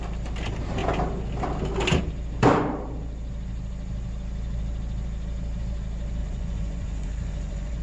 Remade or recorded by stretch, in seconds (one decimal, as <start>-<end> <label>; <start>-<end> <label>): 0.0-6.2 recorded; 6.2-7.8 remade

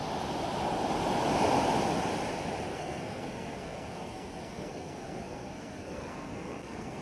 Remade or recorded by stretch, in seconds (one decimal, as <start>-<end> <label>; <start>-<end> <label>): 0.0-2.7 recorded; 2.7-7.0 remade

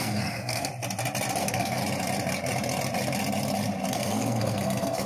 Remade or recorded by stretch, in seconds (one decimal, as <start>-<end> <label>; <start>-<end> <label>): 0.0-0.7 remade; 0.7-1.4 recorded; 1.4-1.8 remade; 1.8-3.9 recorded; 3.9-5.1 remade

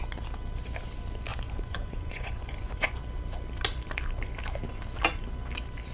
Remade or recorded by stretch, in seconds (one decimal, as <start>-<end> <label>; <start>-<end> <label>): 0.0-1.3 recorded; 1.3-3.0 remade; 3.0-5.9 recorded

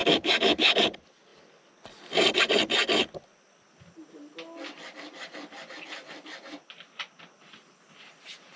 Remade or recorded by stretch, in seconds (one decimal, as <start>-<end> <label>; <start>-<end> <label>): 0.0-0.8 remade; 0.8-8.6 recorded

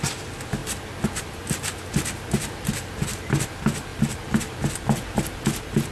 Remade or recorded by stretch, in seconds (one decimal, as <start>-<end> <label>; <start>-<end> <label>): 0.0-5.9 recorded

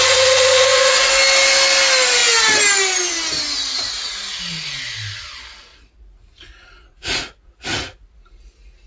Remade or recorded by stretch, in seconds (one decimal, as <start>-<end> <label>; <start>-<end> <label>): 0.0-1.1 remade; 1.1-5.7 recorded; 5.7-8.1 remade; 8.1-8.9 recorded

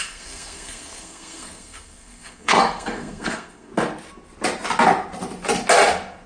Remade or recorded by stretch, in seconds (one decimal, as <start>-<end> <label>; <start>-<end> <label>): 0.0-3.7 remade; 3.7-6.3 recorded